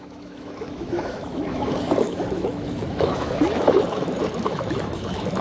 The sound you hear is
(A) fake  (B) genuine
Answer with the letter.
A